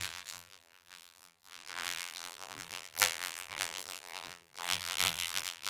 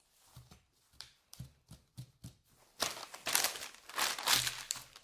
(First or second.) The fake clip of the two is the first